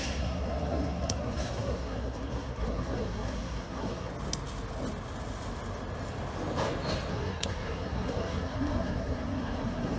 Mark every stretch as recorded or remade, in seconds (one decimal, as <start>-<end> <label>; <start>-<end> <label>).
0.0-4.1 remade; 4.1-7.1 recorded; 7.1-10.0 remade